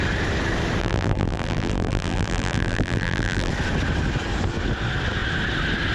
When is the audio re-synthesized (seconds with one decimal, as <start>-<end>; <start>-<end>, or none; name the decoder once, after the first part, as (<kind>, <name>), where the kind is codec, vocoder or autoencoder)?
0.8-3.5 (vocoder, BigVGAN v2)